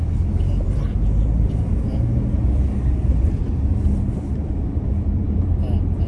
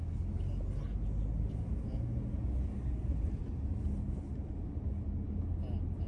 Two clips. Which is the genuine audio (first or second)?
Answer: second